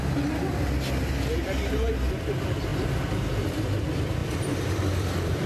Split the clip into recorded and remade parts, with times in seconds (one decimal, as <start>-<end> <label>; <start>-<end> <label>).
0.0-4.2 recorded; 4.2-5.5 remade